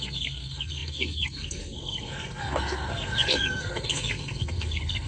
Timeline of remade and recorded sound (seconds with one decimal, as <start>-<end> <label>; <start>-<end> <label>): 0.0-5.1 remade